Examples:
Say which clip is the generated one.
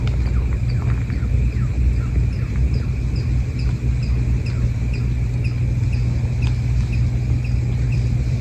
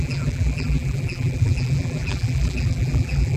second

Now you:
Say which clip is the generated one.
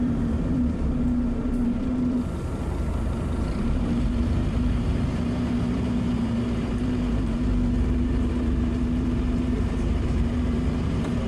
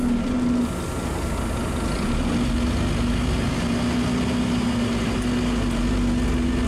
first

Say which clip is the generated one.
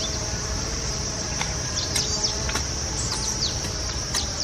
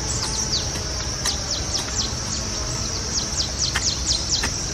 first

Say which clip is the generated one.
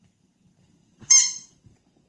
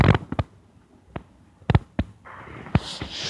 first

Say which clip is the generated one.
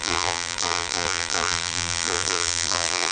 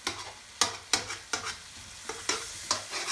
first